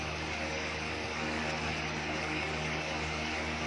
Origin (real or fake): fake